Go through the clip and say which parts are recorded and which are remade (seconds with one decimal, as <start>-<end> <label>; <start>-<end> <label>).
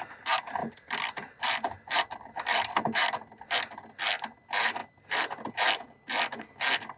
0.0-0.6 recorded; 0.6-4.0 remade; 4.0-4.8 recorded; 4.8-5.5 remade; 5.5-7.0 recorded